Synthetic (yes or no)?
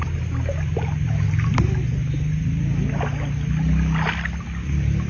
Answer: no